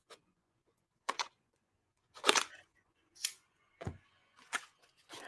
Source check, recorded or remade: remade